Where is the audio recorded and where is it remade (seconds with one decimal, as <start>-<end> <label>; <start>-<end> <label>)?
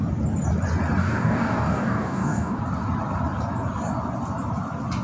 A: 0.0-1.0 recorded; 1.0-2.6 remade; 2.6-5.0 recorded